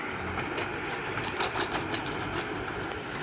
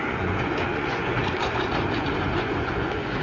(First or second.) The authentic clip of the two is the first